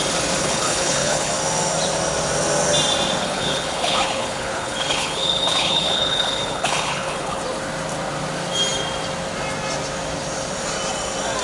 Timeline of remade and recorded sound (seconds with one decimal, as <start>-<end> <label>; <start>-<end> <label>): 0.0-0.4 recorded; 0.4-1.3 remade; 1.3-3.2 recorded; 3.2-7.4 remade; 7.4-11.4 recorded